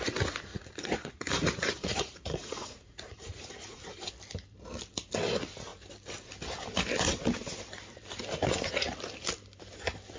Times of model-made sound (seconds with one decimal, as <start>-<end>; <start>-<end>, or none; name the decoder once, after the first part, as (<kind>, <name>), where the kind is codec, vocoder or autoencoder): 0.5-4.1 (vocoder, Vocos)